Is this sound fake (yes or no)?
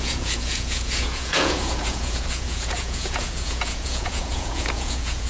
yes